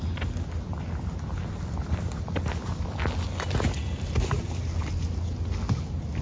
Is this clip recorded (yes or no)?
yes